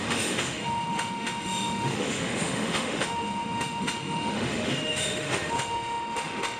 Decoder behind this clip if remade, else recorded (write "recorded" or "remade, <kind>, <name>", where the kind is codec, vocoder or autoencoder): remade, autoencoder, DAC-VAE